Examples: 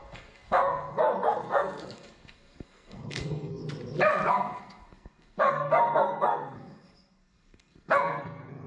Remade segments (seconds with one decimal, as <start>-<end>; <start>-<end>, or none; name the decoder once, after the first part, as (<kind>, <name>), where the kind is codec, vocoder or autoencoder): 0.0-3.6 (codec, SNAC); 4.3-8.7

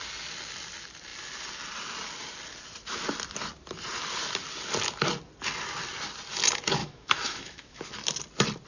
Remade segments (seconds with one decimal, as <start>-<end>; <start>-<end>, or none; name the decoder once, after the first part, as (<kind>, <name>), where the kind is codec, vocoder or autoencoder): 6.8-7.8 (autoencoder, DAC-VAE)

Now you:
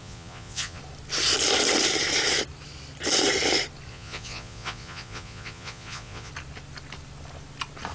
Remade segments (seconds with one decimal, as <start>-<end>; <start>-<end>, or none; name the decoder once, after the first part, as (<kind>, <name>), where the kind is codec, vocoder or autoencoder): 0.0-0.8 (vocoder, Vocos); 3.9-6.3

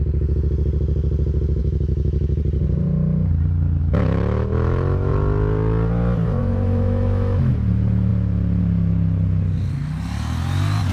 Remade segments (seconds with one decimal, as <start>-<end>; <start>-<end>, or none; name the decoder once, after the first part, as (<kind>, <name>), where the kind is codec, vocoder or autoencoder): 1.6-2.4 (autoencoder, DAC-VAE); 3.8-5.1; 6.4-7.5

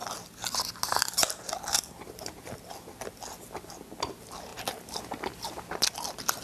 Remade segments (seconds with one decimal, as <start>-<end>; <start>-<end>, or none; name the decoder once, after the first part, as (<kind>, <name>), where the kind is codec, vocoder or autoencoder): none

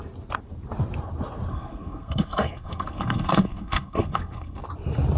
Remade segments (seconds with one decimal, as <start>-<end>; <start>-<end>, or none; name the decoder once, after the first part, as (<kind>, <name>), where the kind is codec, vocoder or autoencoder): 1.5-4.6 (codec, SNAC)

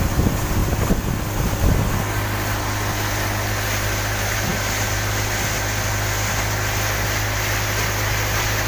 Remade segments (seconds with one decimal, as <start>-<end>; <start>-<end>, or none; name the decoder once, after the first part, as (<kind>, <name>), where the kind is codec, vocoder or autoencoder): none

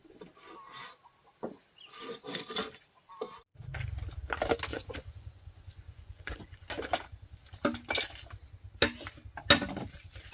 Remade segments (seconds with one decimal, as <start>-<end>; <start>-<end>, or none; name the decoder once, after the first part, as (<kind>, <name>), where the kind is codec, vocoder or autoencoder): 4.7-6.7 (vocoder, Vocos)